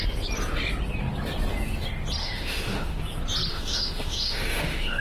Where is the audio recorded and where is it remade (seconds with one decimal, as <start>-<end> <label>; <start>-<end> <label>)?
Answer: 0.0-2.2 recorded; 2.2-3.0 remade; 3.0-3.5 recorded; 3.5-5.0 remade